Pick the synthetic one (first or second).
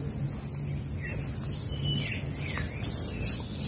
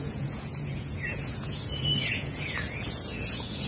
second